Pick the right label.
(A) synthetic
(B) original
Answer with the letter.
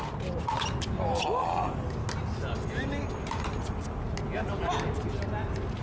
B